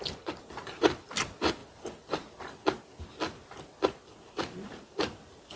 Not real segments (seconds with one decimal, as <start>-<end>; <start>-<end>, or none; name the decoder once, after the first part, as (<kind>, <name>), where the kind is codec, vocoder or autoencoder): 0.0-1.6 (vocoder, BigVGAN v2); 4.3-5.6